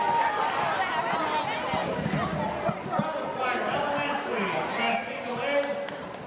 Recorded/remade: recorded